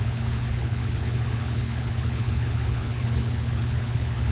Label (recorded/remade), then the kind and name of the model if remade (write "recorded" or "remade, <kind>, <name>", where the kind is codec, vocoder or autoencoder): remade, codec, HILCodec